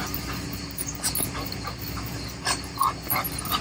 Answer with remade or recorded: recorded